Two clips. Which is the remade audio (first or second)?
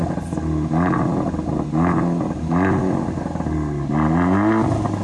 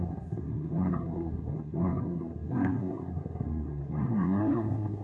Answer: second